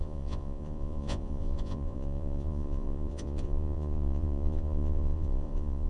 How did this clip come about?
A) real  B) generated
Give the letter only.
B